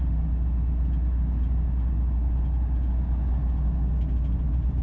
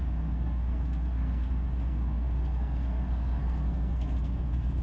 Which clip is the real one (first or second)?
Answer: first